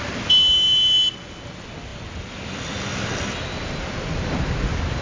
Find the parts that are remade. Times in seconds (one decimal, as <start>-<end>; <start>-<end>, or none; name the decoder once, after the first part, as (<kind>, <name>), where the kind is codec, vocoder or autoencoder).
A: none